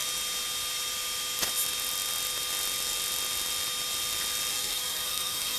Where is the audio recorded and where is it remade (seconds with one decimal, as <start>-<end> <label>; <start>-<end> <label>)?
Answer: 0.0-4.5 recorded; 4.5-5.6 remade